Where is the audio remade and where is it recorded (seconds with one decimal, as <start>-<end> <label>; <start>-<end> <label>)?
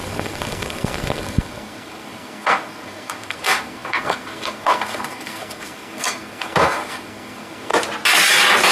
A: 0.0-7.7 remade; 7.7-8.7 recorded